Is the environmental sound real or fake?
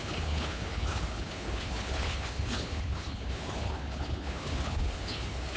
fake